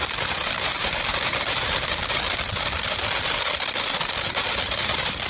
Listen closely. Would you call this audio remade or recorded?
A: remade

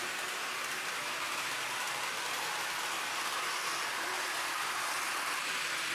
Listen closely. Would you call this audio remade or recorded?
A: recorded